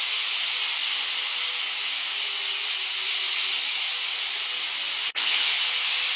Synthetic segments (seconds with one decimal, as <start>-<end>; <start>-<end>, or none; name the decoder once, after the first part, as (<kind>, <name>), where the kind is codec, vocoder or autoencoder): 5.1-5.6 (codec, HILCodec)

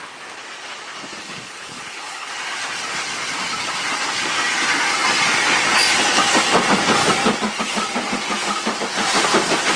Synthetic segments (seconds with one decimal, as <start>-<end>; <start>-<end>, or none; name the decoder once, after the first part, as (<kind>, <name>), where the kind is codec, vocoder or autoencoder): 1.2-2.3 (codec, HILCodec)

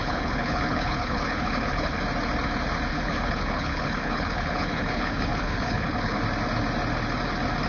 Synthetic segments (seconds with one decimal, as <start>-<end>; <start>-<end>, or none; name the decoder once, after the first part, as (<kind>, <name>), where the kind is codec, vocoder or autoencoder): 0.0-2.0 (codec, HILCodec); 2.9-6.2

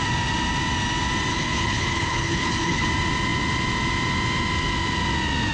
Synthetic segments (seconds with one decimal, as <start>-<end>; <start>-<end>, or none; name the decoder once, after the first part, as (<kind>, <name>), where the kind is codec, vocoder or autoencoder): 1.3-2.9 (codec, HILCodec)

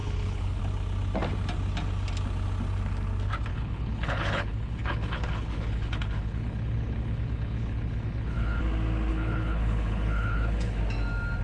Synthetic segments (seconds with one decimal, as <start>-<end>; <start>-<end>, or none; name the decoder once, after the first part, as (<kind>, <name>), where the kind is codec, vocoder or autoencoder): 0.0-0.6 (codec, HILCodec); 3.5-8.6; 9.1-10.8